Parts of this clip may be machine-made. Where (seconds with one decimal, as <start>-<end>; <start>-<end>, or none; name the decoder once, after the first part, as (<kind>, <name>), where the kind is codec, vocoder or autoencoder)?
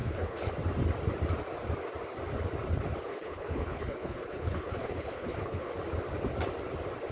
0.0-0.5 (codec, HILCodec); 3.1-5.7